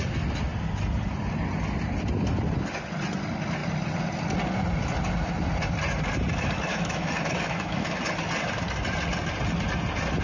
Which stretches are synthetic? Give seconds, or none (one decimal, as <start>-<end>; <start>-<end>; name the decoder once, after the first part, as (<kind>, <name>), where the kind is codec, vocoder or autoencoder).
6.7-8.0 (autoencoder, DAC-VAE)

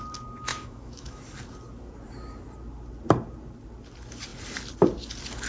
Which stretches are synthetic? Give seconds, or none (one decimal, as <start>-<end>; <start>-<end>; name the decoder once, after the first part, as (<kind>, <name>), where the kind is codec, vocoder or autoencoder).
0.5-1.2 (autoencoder, DAC-VAE)

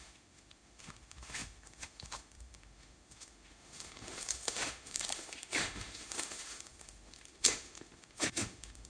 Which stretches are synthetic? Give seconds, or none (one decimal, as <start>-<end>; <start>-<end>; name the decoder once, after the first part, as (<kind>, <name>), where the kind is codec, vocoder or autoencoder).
0.0-8.9 (autoencoder, DAC-VAE)

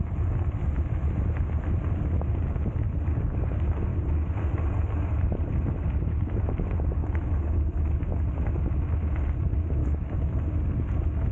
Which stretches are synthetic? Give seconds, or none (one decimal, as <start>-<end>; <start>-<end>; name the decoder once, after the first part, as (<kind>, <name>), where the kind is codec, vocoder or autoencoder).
7.0-7.6 (autoencoder, DAC-VAE); 9.8-10.5

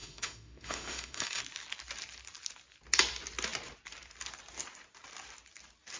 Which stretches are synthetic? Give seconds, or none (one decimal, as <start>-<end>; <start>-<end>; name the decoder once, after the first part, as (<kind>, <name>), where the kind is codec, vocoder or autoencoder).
0.0-1.4 (autoencoder, DAC-VAE)